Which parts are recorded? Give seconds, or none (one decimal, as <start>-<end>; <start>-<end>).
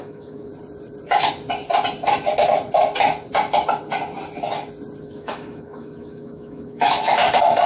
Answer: 0.5-5.0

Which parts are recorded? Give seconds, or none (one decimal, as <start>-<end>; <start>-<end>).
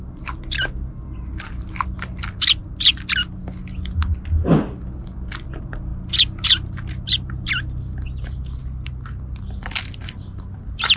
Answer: 0.0-11.0